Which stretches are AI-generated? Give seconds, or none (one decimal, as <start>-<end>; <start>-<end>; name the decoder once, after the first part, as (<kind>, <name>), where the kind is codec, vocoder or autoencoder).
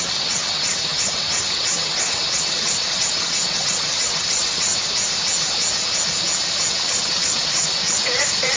0.0-4.7 (vocoder, WaveNeXt); 6.7-8.6